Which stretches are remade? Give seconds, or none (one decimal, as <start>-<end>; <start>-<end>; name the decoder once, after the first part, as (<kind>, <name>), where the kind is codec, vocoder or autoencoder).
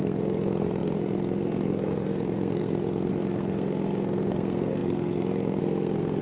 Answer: 0.0-6.2 (codec, SNAC)